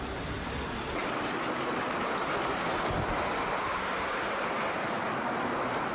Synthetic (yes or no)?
no